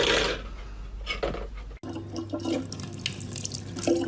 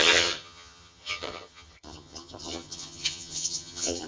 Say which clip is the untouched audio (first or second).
first